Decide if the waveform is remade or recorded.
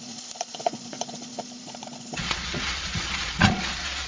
remade